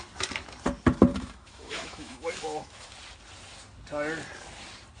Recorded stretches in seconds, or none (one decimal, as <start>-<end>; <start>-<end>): 0.0-1.1; 2.9-5.0